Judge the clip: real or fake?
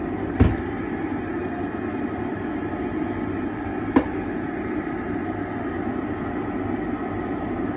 fake